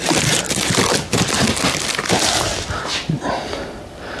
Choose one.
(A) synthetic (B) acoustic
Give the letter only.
B